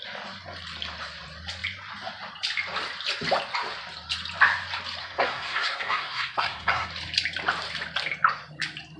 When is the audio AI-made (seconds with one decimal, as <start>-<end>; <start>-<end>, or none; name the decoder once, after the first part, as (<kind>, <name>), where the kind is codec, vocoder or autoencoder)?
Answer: 5.0-6.9 (codec, SNAC)